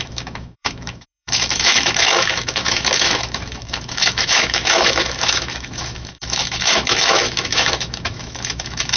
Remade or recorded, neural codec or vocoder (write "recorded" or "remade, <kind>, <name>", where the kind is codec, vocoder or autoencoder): remade, autoencoder, DAC-VAE